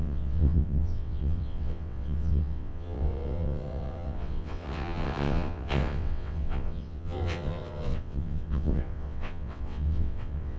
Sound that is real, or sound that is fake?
fake